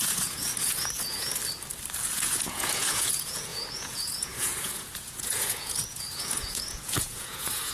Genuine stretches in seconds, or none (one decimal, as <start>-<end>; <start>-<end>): 1.4-2.0